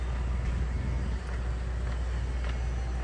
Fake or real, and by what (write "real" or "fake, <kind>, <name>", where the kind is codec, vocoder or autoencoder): real